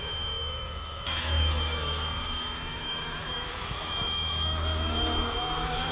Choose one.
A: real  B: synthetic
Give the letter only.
B